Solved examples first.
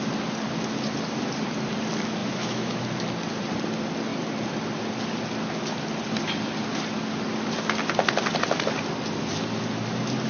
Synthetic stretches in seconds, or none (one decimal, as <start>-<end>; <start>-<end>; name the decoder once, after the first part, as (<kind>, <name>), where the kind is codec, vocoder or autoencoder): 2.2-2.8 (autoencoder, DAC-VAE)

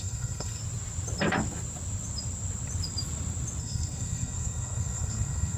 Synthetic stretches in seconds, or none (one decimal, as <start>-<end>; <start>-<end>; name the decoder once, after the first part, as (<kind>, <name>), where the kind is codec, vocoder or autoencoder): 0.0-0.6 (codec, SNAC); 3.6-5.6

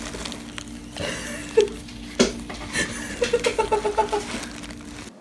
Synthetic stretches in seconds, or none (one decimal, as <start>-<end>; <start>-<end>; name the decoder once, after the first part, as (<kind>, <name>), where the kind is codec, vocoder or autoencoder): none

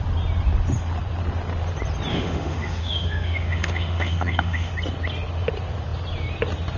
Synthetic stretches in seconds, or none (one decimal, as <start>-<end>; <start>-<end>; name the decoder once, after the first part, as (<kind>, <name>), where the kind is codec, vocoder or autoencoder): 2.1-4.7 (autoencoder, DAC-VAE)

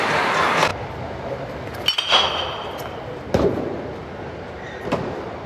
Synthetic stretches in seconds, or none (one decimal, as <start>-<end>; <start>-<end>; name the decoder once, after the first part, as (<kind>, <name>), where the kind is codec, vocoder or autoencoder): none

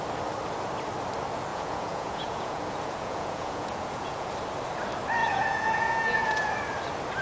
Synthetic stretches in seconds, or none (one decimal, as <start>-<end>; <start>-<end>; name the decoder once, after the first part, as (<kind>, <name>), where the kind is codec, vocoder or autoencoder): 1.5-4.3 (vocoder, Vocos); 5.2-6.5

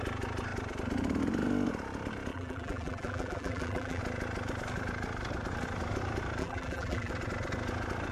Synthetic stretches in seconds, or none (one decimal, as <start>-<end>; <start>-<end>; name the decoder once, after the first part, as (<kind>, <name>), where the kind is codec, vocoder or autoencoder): 2.3-4.0 (vocoder, BigVGAN v2); 6.4-7.1

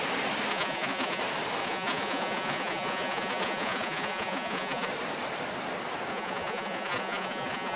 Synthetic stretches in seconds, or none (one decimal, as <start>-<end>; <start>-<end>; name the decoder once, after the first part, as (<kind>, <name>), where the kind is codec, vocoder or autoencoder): 0.5-1.2 (vocoder, Vocos); 1.6-4.9; 6.1-7.8